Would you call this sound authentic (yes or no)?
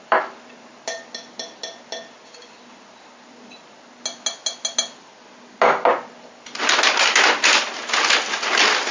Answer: yes